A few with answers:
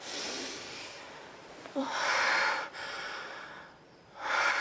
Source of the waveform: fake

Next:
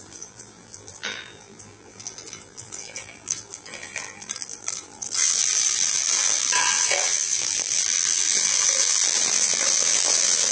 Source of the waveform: fake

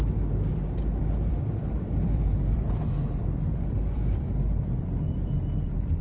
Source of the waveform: fake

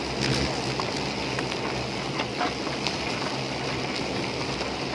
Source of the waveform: real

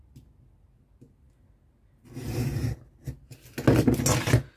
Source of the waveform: real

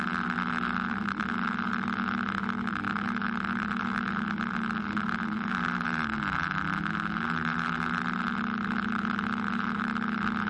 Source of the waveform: real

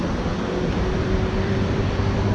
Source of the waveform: fake